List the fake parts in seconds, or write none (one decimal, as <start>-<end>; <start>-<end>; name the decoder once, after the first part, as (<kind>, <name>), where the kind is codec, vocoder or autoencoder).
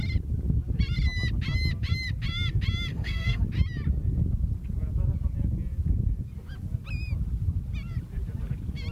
2.9-3.4 (codec, SNAC)